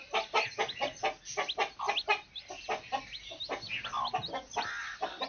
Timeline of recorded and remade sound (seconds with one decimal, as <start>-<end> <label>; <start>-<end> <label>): 0.0-5.3 recorded